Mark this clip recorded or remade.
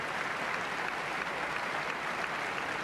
recorded